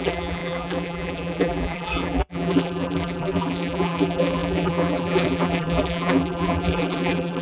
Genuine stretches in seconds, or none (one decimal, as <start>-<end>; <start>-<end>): none